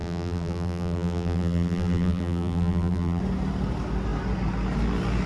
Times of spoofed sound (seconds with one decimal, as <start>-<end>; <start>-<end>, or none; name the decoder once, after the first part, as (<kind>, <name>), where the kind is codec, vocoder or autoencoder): 0.0-3.2 (vocoder, BigVGAN v2)